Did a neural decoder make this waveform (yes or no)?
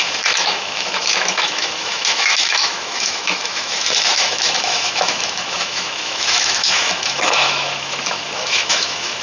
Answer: yes